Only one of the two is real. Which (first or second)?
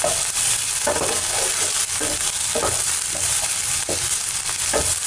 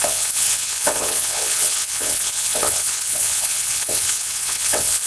first